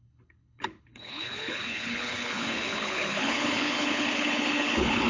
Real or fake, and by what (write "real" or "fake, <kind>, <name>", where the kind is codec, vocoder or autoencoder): fake, codec, HILCodec